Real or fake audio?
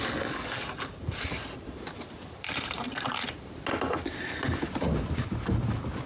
real